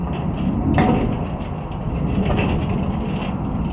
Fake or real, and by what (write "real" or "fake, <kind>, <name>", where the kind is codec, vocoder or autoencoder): real